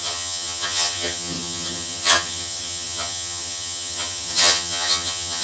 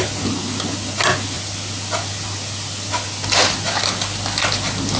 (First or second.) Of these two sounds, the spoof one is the first